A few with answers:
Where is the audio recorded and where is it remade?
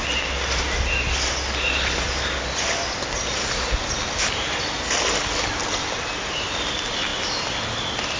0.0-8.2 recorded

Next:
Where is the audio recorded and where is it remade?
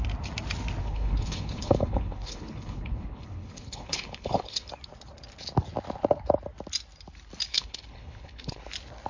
0.0-0.8 recorded; 0.8-4.7 remade; 4.7-7.5 recorded; 7.5-8.6 remade; 8.6-9.1 recorded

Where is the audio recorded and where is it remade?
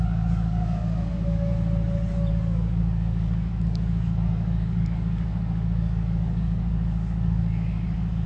0.0-1.5 remade; 1.5-2.3 recorded; 2.3-8.3 remade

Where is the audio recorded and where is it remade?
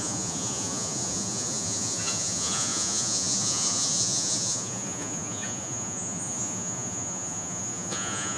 0.0-8.4 remade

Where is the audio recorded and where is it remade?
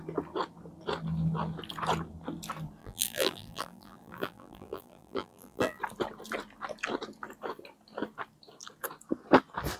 0.0-2.8 recorded; 2.8-5.8 remade; 5.8-9.8 recorded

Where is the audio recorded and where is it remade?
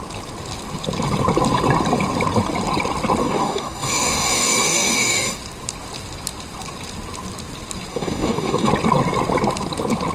0.0-3.2 recorded; 3.2-5.4 remade; 5.4-7.9 recorded; 7.9-8.7 remade; 8.7-10.1 recorded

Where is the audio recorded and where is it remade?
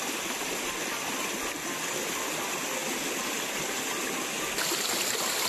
0.0-5.5 recorded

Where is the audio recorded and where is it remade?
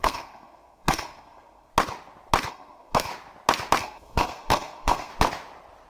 0.0-1.7 remade; 1.7-2.5 recorded; 2.5-3.1 remade; 3.1-3.8 recorded; 3.8-5.1 remade; 5.1-5.9 recorded